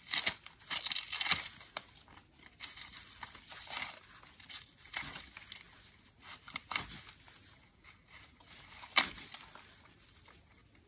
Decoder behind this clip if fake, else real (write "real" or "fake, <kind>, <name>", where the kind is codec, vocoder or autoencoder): real